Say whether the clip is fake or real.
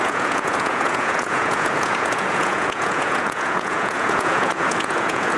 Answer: fake